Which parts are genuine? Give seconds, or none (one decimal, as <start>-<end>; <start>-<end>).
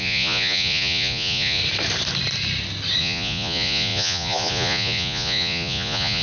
1.6-3.0